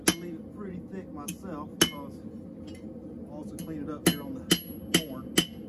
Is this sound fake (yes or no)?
no